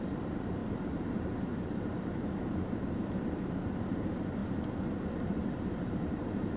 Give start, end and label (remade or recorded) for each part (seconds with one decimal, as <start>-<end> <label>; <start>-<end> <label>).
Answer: 0.0-4.4 remade; 4.4-5.1 recorded; 5.1-6.6 remade